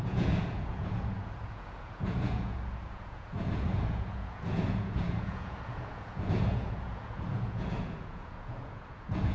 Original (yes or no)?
no